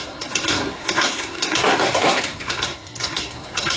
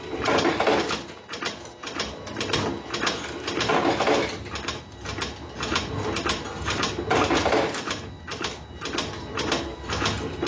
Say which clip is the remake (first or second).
first